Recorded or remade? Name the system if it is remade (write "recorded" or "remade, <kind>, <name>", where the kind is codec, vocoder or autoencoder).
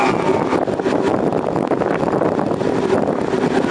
recorded